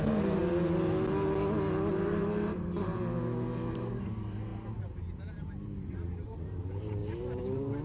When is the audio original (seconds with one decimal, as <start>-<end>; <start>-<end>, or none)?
0.4-1.9; 2.9-3.7